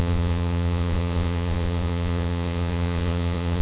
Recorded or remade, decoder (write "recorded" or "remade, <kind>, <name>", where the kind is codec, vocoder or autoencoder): remade, vocoder, Vocos